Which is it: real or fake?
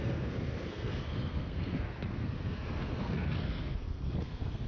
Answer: fake